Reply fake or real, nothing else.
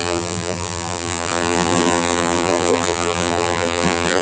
fake